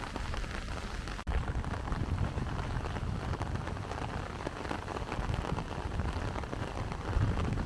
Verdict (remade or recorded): recorded